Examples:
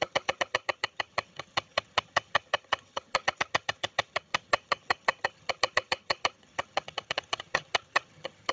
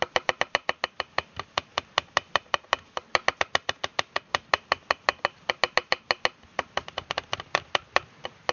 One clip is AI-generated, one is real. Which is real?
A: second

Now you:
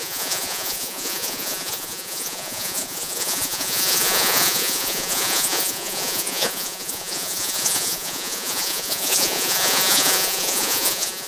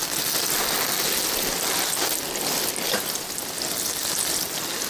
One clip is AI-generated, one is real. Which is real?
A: second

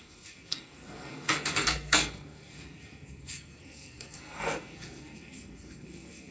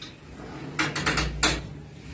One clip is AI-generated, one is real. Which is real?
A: second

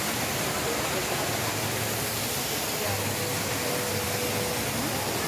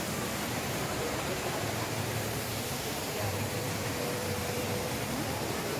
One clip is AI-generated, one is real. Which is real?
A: first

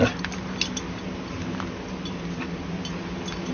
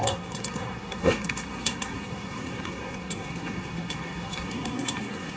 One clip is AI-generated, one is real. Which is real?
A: first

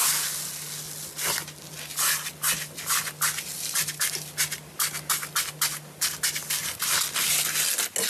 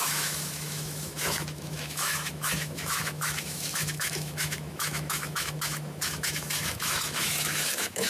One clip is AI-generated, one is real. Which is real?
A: first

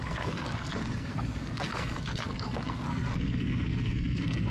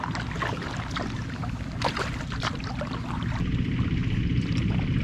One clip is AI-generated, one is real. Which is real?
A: second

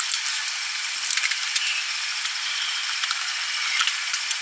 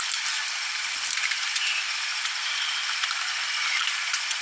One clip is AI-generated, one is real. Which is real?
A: first